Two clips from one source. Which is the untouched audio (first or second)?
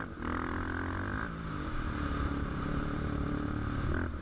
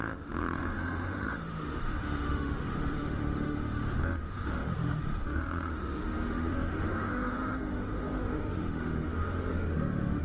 first